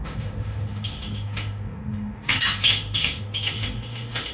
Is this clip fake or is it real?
fake